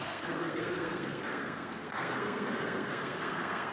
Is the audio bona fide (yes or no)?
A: no